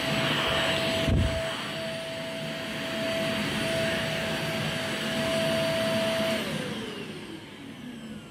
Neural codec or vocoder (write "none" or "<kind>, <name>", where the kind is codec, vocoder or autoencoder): none